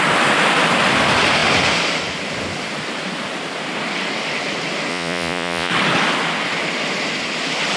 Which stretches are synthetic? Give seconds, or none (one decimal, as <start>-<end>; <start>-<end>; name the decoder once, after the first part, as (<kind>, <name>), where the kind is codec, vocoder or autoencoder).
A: 4.9-5.7 (vocoder, Vocos)